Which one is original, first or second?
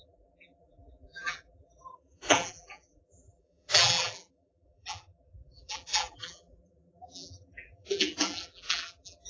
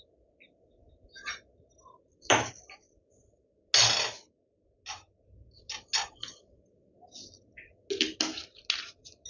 second